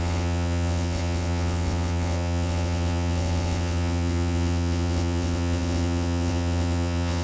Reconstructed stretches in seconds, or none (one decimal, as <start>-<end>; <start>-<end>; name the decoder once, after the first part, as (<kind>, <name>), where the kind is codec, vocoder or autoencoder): 0.0-7.2 (vocoder, WaveNeXt)